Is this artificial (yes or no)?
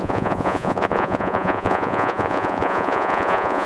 yes